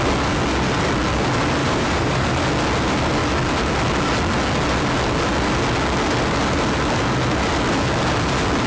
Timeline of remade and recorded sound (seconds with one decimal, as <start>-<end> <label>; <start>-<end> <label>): 0.0-1.6 recorded; 1.6-2.4 remade; 2.4-8.7 recorded